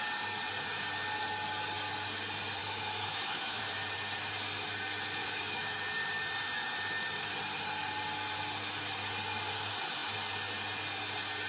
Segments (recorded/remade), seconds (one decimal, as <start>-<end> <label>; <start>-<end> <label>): 0.0-2.6 recorded; 2.6-3.6 remade; 3.6-5.2 recorded; 5.2-5.9 remade; 5.9-11.5 recorded